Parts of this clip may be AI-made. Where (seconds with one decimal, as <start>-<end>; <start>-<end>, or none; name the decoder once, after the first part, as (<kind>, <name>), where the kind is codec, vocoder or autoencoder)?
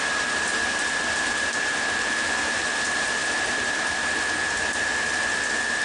0.8-2.6 (vocoder, BigVGAN v2); 3.2-3.9